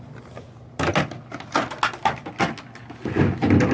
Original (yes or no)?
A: yes